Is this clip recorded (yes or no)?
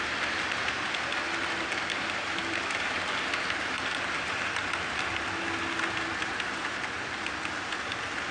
yes